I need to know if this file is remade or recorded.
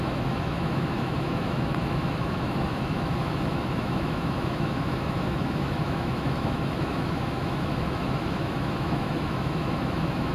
remade